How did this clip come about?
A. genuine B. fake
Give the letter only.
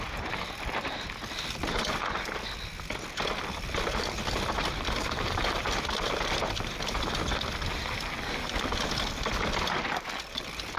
A